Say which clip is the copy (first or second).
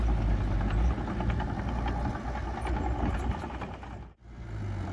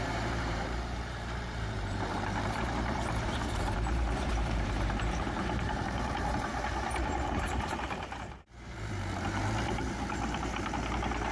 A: second